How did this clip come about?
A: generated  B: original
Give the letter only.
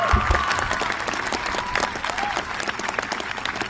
B